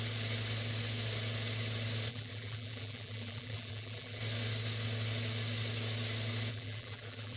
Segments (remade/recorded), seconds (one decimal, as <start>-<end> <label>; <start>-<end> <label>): 0.0-2.1 recorded; 2.1-4.2 remade; 4.2-6.5 recorded; 6.5-7.4 remade